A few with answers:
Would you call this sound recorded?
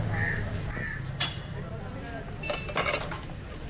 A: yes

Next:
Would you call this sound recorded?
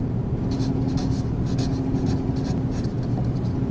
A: yes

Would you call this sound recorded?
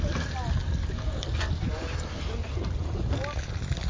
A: yes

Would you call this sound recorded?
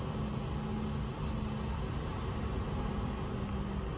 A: yes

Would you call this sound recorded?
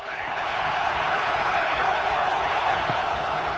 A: no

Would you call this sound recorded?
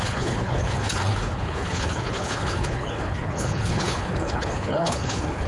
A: no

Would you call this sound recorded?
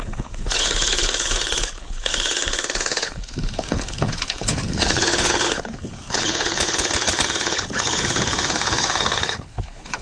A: no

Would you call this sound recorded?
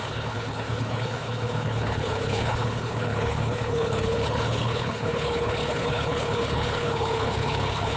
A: no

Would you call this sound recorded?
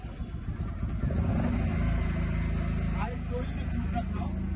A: yes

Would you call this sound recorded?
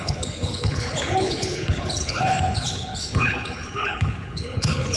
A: no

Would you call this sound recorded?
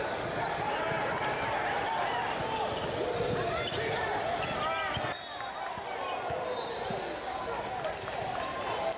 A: yes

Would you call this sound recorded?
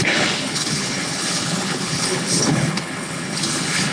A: no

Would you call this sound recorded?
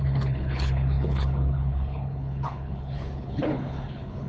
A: no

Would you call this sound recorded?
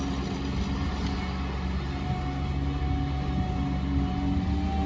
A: yes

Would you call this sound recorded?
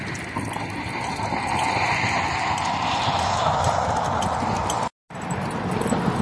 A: yes